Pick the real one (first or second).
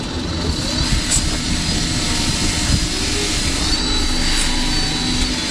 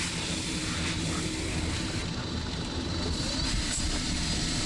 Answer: first